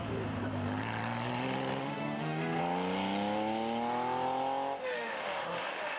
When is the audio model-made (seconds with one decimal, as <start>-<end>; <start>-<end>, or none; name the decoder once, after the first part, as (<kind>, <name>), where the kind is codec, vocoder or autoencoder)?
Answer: 1.8-2.6 (autoencoder, DAC-VAE); 4.8-6.0